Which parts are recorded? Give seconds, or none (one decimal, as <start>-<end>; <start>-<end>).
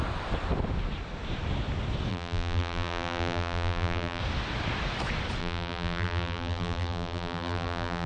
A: 0.0-2.1; 4.2-5.4